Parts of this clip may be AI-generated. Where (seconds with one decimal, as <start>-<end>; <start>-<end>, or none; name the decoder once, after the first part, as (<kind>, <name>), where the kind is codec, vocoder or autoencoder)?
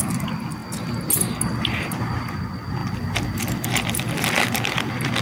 2.8-4.8 (vocoder, BigVGAN v2)